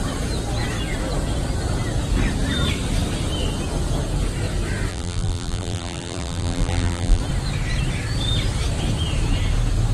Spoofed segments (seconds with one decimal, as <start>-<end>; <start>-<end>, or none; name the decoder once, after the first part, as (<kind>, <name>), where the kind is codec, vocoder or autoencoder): 4.9-7.2 (vocoder, BigVGAN v2)